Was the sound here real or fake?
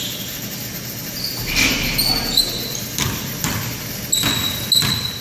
real